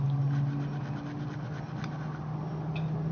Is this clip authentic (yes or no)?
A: yes